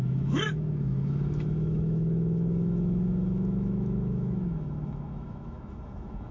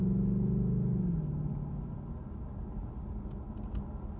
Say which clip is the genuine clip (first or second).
second